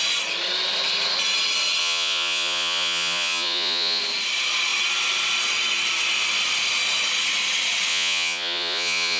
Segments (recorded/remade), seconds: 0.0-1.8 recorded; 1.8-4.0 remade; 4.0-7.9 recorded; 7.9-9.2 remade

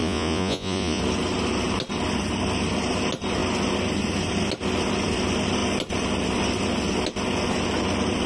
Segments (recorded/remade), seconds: 0.0-1.0 remade; 1.0-8.3 recorded

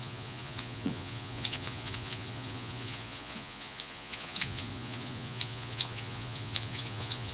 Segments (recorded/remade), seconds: 0.0-7.3 remade

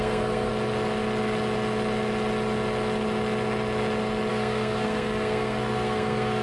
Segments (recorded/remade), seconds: 0.0-0.5 remade; 0.5-4.3 recorded; 4.3-6.4 remade

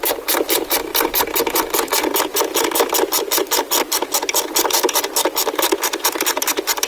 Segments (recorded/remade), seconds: 0.0-0.9 remade; 0.9-4.7 recorded; 4.7-6.9 remade

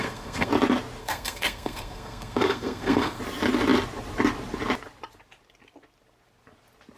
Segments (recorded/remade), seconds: 0.0-0.5 remade; 0.5-1.0 recorded; 1.0-3.2 remade; 3.2-7.0 recorded